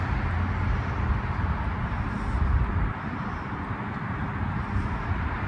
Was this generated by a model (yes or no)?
no